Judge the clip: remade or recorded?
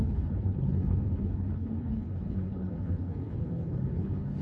remade